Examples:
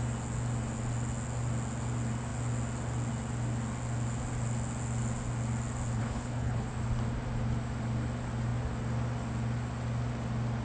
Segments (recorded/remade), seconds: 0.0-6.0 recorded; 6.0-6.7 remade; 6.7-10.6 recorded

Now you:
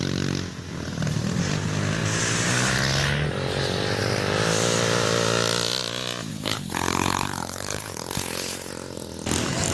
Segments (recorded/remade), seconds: 0.0-6.3 recorded; 6.3-8.7 remade; 8.7-9.7 recorded

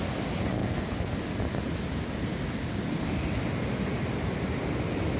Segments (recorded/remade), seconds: 0.0-5.2 recorded

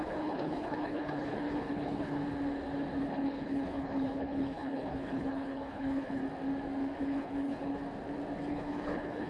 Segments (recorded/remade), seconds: 0.0-2.2 remade; 2.2-3.0 recorded; 3.0-6.2 remade; 6.2-7.0 recorded; 7.0-7.8 remade; 7.8-8.5 recorded; 8.5-9.3 remade

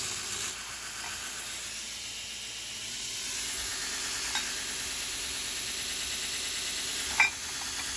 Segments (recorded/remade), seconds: 0.0-8.0 recorded

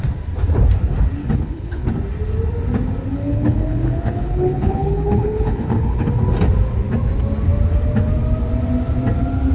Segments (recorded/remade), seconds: 0.0-1.2 recorded; 1.2-1.9 remade; 1.9-3.1 recorded; 3.1-6.1 remade; 6.1-9.5 recorded

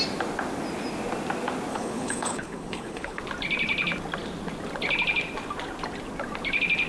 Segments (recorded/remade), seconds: 0.0-1.7 recorded; 1.7-3.2 remade; 3.2-6.9 recorded

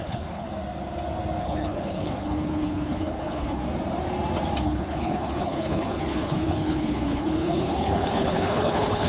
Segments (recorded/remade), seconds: 0.0-0.5 remade; 0.5-1.4 recorded; 1.4-3.6 remade; 3.6-4.6 recorded; 4.6-9.1 remade